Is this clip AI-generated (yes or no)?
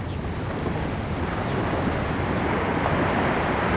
no